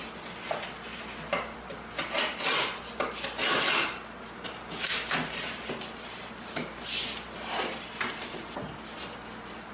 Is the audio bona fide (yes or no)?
yes